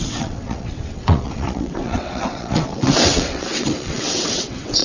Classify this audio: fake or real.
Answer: fake